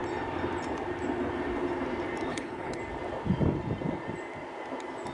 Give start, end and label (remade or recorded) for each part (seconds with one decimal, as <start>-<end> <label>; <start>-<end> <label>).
0.0-2.3 recorded; 2.3-2.8 remade; 2.8-5.1 recorded